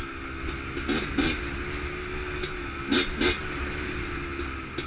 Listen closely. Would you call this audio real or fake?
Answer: real